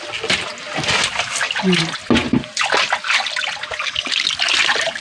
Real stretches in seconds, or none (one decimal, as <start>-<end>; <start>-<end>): 0.0-5.0